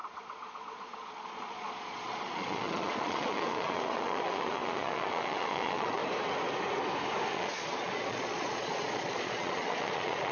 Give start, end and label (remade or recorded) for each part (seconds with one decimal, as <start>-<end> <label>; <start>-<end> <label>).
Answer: 0.0-6.0 remade; 6.0-7.3 recorded; 7.3-10.3 remade